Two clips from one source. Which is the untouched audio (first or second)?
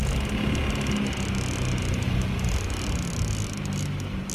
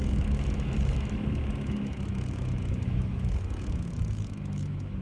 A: first